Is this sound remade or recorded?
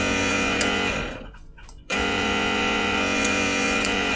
remade